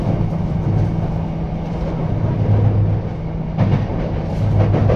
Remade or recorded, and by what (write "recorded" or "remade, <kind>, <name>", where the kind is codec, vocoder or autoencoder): recorded